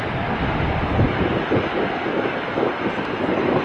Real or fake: real